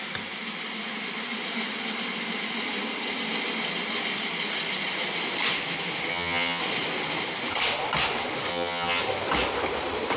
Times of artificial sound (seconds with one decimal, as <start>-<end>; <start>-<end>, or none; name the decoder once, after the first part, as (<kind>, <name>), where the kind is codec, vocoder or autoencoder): 6.1-6.6 (vocoder, HiFi-GAN); 8.5-9.0